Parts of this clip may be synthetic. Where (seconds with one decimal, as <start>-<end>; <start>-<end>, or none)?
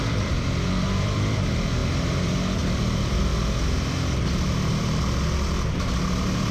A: 0.0-1.8; 2.7-3.3